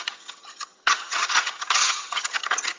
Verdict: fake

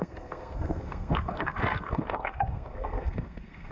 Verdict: fake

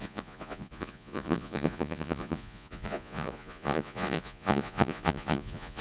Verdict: fake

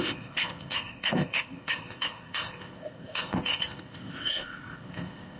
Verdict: fake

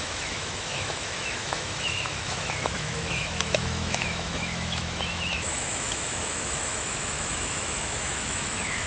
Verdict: fake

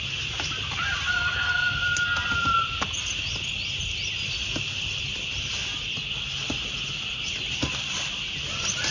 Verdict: real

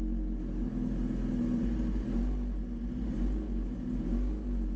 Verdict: real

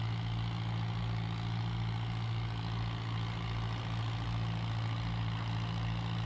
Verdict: real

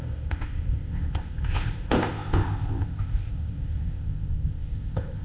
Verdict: fake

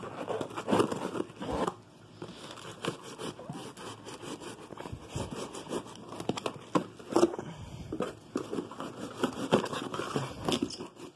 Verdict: real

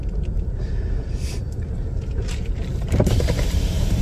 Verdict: fake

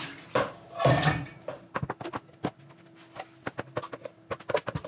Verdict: real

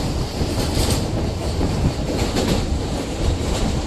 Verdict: real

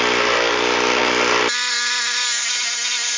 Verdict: real